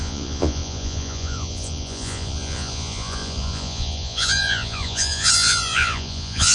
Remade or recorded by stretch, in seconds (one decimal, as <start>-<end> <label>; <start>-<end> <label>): 0.0-6.5 remade